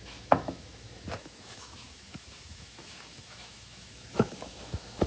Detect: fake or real fake